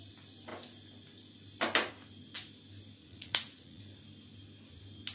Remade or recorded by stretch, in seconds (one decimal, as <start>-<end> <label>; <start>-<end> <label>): 0.0-3.0 recorded; 3.0-3.8 remade; 3.8-5.1 recorded